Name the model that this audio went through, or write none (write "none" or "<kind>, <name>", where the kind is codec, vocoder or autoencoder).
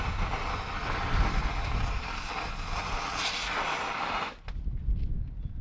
none